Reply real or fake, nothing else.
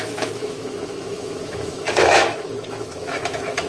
fake